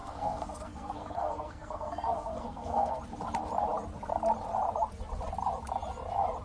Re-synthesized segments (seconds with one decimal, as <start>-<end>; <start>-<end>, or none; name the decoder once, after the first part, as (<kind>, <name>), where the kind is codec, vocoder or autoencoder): 0.0-3.0 (codec, SNAC)